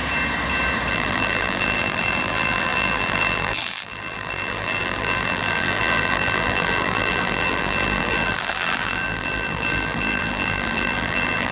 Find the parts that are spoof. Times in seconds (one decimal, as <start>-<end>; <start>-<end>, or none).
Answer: 0.9-11.5